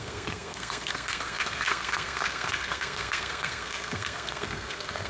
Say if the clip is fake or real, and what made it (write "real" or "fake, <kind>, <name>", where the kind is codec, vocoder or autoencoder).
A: fake, codec, SNAC